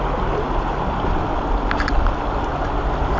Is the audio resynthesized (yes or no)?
no